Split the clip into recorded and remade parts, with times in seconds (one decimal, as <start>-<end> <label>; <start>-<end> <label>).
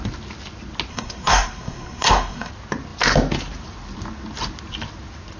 0.0-0.9 recorded; 0.9-2.5 remade; 2.5-5.4 recorded